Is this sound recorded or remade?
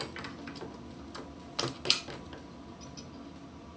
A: recorded